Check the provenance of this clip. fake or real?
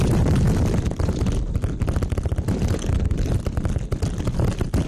real